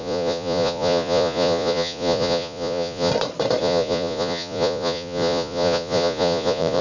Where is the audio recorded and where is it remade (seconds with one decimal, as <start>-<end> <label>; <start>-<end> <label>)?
0.0-3.1 remade; 3.1-3.6 recorded; 3.6-6.8 remade